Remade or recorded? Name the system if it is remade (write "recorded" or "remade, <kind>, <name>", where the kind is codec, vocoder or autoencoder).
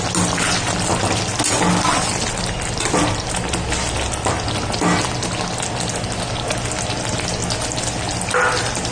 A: recorded